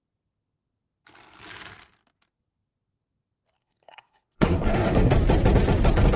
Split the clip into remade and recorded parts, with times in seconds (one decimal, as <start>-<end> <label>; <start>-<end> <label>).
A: 0.0-3.6 recorded; 3.6-5.1 remade; 5.1-6.2 recorded